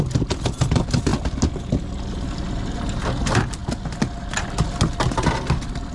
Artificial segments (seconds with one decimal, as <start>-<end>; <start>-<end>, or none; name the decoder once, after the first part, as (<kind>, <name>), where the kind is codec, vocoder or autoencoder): none